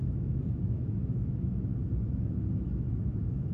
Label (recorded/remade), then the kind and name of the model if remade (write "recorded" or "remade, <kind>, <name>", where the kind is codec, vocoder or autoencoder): remade, autoencoder, DAC-VAE